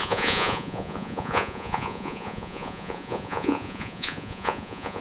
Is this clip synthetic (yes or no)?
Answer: yes